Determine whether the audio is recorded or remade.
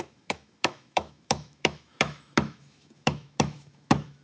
remade